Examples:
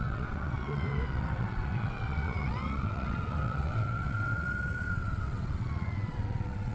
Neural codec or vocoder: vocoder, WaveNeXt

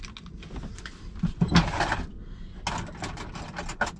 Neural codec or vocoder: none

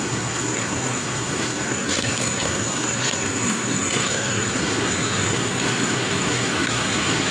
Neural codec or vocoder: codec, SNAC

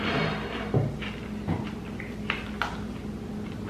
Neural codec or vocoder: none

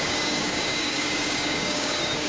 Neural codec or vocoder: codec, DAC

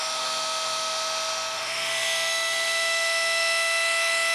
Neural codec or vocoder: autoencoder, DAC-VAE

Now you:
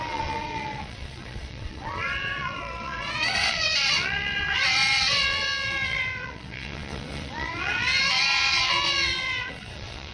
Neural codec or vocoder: vocoder, WaveNeXt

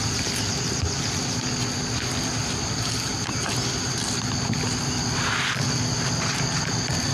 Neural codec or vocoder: none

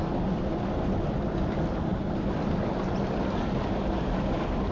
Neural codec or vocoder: none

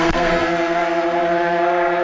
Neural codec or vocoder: codec, SNAC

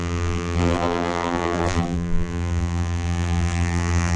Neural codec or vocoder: vocoder, BigVGAN v2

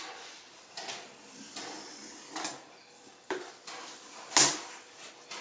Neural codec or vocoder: none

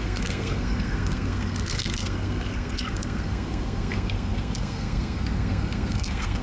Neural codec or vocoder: codec, SNAC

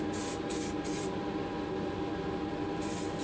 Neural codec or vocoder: none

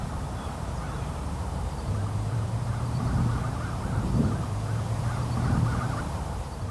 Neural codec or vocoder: vocoder, BigVGAN v2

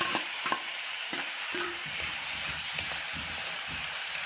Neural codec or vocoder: vocoder, BigVGAN v2